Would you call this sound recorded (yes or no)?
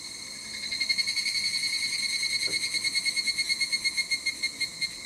yes